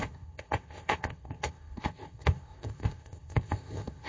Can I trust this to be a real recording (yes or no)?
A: no